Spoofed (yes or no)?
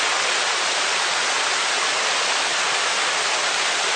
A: no